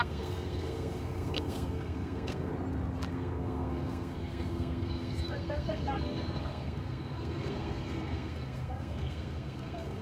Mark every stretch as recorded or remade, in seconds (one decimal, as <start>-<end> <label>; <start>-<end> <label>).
0.0-2.5 remade; 2.5-3.1 recorded; 3.1-10.0 remade